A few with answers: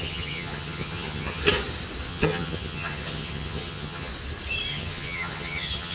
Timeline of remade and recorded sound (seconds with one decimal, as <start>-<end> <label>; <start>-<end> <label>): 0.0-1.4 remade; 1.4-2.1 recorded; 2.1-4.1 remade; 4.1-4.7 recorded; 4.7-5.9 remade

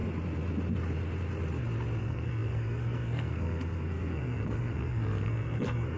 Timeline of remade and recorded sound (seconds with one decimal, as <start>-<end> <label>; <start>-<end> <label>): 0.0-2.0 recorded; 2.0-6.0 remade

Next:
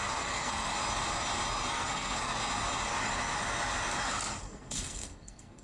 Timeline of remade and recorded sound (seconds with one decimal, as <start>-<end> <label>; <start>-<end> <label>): 0.0-0.7 remade; 0.7-1.7 recorded; 1.7-2.4 remade; 2.4-4.4 recorded; 4.4-5.6 remade

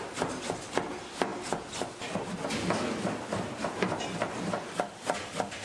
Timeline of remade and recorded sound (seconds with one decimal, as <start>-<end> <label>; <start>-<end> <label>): 0.0-5.6 recorded